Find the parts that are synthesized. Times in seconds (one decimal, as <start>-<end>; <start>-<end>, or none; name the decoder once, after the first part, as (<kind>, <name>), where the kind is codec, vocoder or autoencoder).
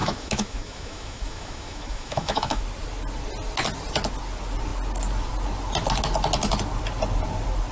0.0-2.6 (autoencoder, DAC-VAE)